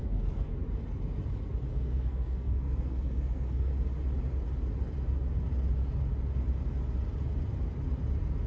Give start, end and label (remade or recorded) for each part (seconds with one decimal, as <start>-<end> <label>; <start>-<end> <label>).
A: 0.0-0.5 remade; 0.5-1.7 recorded; 1.7-3.7 remade; 3.7-8.5 recorded